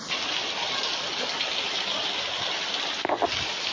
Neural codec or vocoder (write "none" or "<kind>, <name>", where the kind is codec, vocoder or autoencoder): none